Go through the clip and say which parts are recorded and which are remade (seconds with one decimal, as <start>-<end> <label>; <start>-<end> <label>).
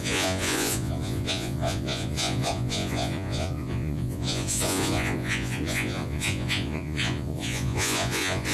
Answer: 0.0-8.5 remade